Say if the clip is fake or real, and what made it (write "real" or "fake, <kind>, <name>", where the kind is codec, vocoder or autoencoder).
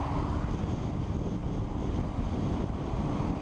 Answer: real